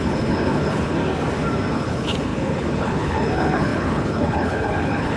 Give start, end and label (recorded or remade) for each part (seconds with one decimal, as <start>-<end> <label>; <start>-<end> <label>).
0.0-1.0 remade; 1.0-1.7 recorded; 1.7-5.2 remade